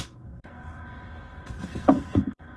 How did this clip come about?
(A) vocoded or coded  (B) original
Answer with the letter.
A